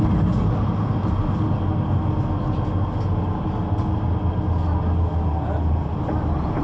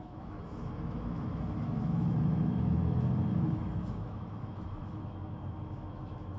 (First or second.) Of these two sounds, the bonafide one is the first